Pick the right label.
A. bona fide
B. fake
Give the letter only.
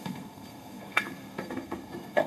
B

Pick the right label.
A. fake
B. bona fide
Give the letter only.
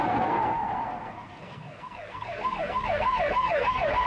A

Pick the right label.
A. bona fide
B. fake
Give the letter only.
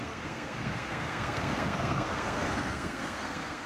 B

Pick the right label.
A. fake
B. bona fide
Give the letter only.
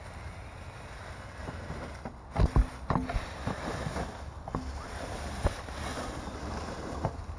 B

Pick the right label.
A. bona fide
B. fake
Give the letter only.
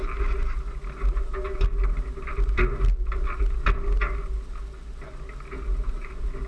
A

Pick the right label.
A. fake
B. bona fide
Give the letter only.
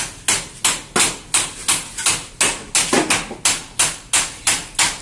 B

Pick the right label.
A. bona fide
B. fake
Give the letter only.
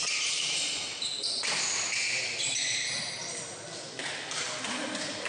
A